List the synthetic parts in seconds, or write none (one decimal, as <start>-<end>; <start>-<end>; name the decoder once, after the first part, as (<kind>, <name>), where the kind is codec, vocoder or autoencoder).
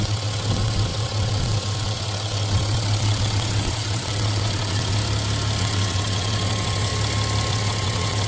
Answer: 0.0-5.0 (vocoder, WaveNeXt); 5.6-6.9; 7.5-8.3